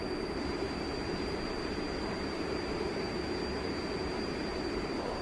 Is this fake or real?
fake